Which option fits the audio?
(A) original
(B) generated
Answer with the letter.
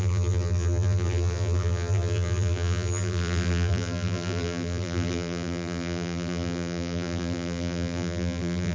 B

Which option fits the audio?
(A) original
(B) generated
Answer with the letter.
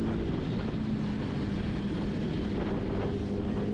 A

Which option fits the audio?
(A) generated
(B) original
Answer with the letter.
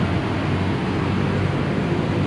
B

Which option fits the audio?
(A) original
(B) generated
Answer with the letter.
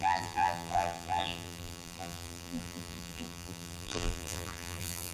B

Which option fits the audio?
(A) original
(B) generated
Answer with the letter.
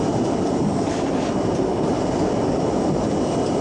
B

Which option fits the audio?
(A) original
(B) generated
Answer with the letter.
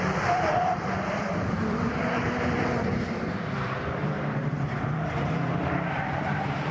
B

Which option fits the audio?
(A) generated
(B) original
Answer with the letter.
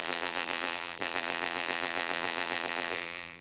A